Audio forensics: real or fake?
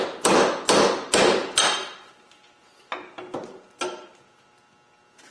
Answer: real